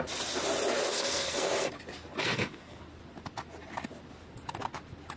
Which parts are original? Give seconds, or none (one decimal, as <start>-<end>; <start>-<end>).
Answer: 0.0-0.9; 1.7-2.2; 2.8-5.2